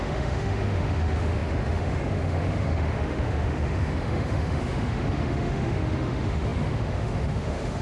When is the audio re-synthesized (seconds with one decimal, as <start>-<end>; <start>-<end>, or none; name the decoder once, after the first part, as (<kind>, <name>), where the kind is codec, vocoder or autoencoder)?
0.0-7.8 (autoencoder, DAC-VAE)